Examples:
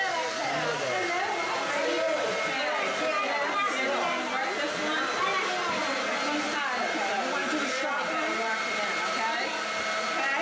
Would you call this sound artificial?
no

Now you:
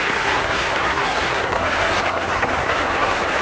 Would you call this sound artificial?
yes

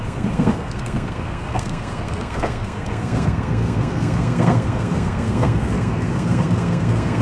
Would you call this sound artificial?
yes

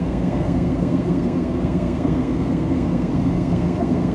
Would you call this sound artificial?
yes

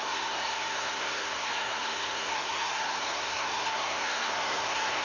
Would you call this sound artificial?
yes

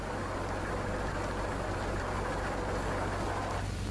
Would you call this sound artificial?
no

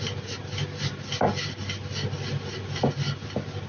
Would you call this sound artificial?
no